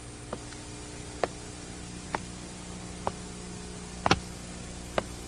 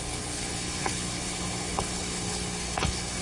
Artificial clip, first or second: second